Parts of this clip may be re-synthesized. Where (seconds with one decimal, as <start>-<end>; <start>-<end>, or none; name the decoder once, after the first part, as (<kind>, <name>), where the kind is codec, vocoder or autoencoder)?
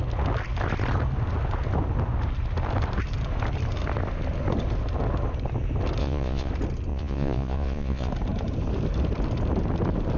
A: 6.0-6.5 (vocoder, Vocos); 6.9-8.1